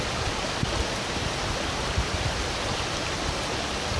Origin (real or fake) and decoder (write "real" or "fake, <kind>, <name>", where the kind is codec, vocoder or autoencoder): real